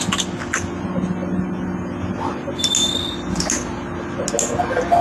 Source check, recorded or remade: recorded